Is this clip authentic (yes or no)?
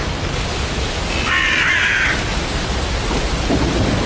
yes